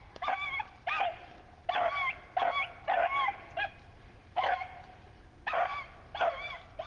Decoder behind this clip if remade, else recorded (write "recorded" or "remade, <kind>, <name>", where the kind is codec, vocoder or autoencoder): recorded